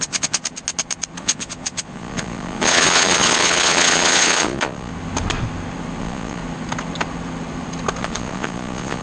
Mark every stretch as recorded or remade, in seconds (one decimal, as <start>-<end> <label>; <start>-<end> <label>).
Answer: 0.0-0.4 remade; 0.4-1.2 recorded; 1.2-4.9 remade; 4.9-6.0 recorded; 6.0-6.4 remade; 6.4-8.0 recorded; 8.0-9.0 remade